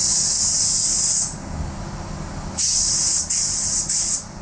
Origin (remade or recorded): recorded